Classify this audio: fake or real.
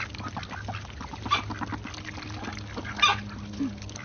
real